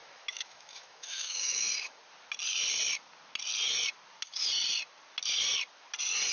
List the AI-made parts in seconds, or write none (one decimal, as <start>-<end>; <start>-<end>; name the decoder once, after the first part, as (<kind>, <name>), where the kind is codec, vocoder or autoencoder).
0.0-2.0 (autoencoder, DAC-VAE)